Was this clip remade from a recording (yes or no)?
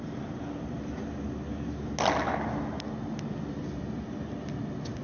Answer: no